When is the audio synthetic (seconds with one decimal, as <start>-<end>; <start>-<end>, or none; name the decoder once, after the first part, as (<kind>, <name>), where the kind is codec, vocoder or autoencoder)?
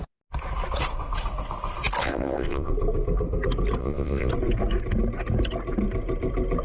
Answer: 2.0-2.7 (vocoder, WaveNeXt); 3.8-4.3